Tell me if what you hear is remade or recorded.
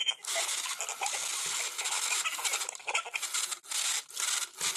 recorded